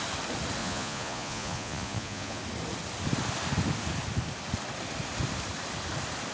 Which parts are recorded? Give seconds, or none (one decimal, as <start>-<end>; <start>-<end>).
0.0-0.6; 2.4-6.3